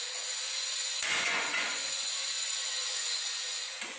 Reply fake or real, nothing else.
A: fake